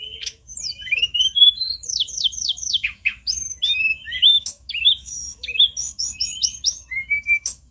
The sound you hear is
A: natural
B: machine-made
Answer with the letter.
B